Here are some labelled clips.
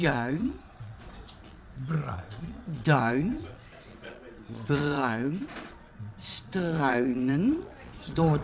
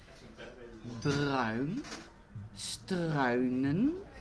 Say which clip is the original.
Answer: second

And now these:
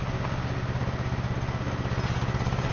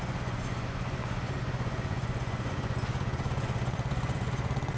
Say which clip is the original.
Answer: first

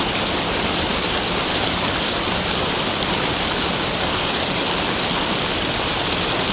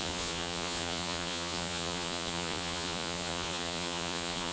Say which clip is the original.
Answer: first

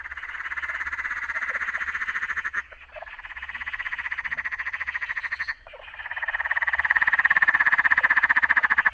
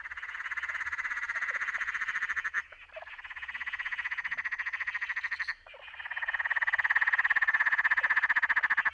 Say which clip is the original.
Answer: second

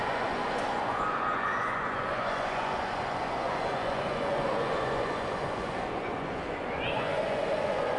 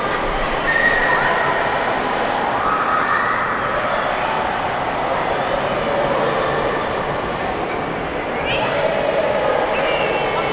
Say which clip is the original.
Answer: second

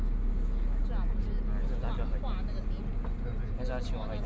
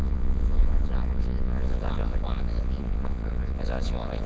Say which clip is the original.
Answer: first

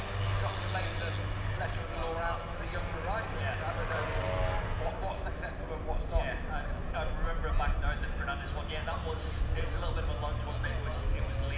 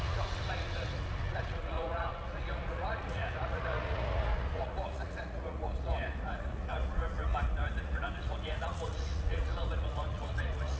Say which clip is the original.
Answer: first